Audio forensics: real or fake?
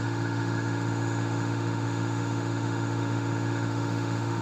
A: fake